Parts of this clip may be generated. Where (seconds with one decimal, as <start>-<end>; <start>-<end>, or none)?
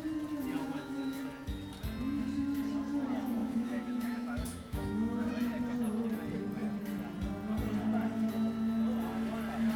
0.6-1.2; 3.4-5.3